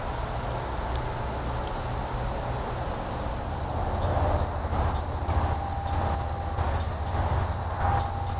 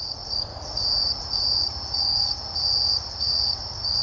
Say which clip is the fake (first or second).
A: second